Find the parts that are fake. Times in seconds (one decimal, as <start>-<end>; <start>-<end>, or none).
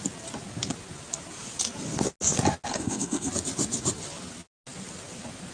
2.7-3.3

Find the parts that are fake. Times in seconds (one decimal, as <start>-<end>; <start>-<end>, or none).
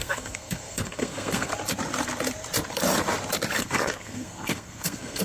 0.0-1.5; 3.6-5.2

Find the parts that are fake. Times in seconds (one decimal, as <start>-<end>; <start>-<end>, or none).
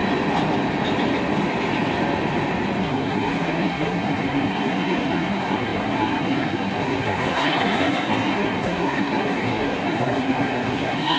2.8-11.2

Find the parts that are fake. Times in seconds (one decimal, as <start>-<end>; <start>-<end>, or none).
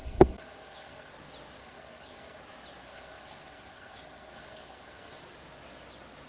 0.0-1.1; 1.6-2.4; 2.8-5.2